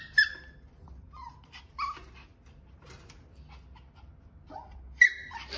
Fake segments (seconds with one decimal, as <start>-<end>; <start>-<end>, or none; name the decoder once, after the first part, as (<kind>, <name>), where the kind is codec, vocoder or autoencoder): none